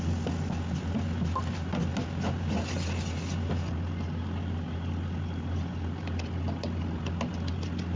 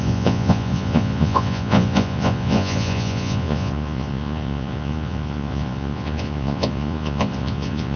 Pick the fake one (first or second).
second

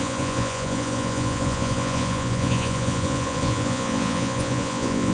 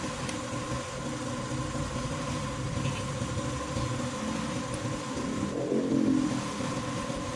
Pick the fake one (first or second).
first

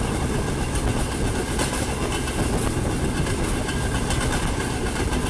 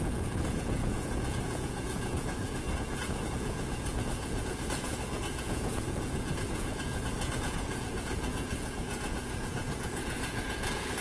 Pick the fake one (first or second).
second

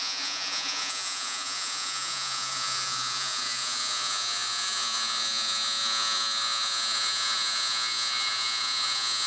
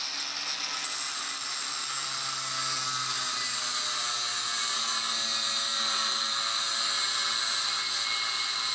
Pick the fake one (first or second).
first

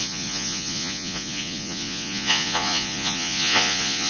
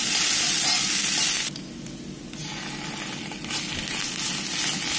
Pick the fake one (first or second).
first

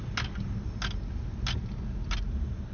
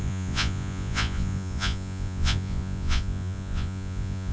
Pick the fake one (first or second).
second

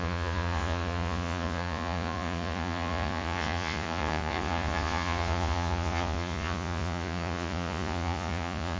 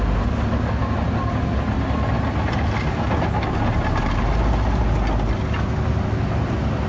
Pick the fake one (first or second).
first